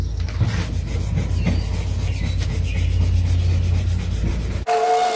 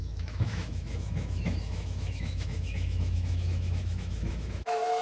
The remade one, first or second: second